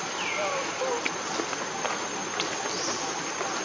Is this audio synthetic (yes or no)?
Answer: no